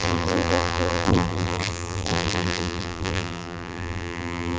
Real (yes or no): no